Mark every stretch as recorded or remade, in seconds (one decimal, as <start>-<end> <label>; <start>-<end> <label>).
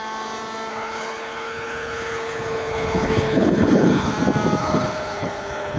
0.0-0.7 recorded; 0.7-4.1 remade; 4.1-4.6 recorded; 4.6-5.8 remade